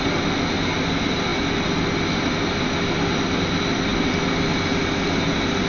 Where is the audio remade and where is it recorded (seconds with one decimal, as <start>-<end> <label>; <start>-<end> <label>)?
0.0-5.7 recorded